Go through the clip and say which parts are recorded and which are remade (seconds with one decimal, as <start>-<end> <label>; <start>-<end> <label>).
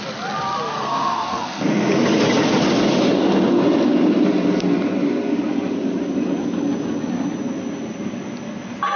0.0-0.7 recorded; 0.7-1.7 remade; 1.7-9.0 recorded